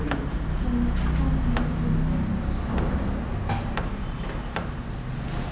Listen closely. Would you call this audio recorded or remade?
recorded